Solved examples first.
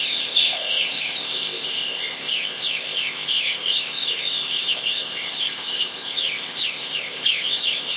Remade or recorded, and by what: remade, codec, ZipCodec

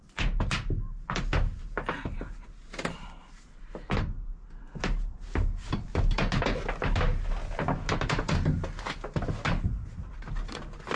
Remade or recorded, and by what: recorded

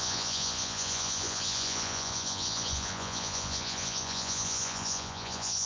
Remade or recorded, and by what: remade, vocoder, Vocos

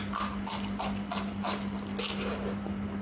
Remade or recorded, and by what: recorded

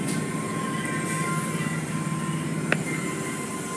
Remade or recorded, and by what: recorded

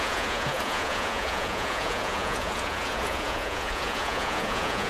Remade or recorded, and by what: remade, vocoder, Vocos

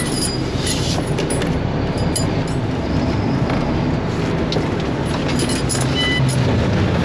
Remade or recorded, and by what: recorded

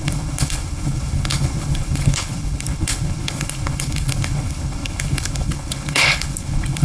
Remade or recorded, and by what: remade, codec, HILCodec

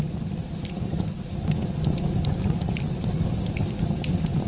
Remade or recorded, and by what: recorded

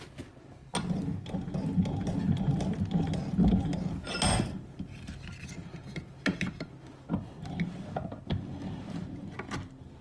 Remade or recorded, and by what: recorded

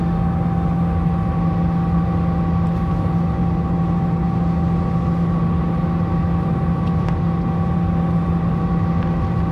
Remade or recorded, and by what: recorded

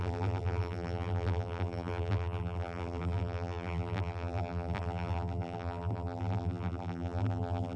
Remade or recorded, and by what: remade, vocoder, BigVGAN v2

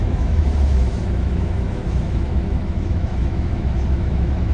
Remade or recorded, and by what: remade, autoencoder, DAC-VAE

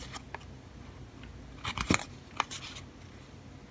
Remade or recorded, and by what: recorded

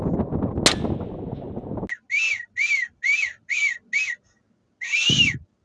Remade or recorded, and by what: recorded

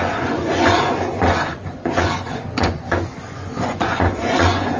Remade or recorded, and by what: remade, vocoder, Vocos